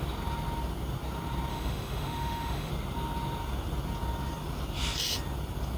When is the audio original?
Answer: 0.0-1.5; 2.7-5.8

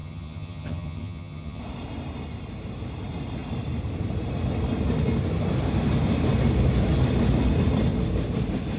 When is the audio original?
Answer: 1.6-8.8